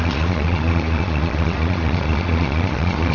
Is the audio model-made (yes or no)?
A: yes